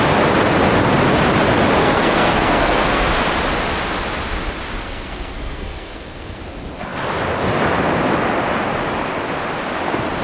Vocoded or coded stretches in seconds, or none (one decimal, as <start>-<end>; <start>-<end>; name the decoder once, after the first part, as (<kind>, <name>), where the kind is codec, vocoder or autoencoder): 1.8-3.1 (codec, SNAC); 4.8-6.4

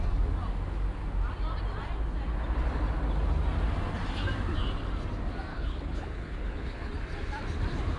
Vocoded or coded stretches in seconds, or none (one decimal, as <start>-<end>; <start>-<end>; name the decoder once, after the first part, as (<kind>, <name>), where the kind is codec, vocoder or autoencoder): 5.5-6.9 (codec, HILCodec)

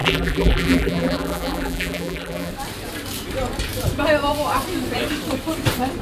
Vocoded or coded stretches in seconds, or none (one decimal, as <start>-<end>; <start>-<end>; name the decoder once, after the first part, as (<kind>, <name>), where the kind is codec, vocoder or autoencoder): 0.0-2.5 (vocoder, BigVGAN v2)

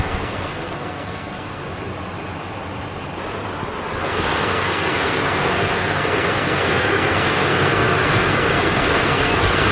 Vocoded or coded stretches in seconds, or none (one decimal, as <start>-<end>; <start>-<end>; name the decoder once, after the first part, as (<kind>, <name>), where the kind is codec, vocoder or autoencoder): 0.0-1.6 (codec, SNAC); 4.0-9.7